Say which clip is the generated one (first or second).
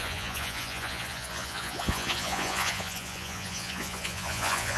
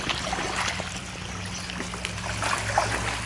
first